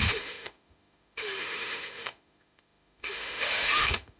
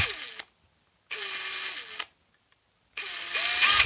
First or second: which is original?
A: second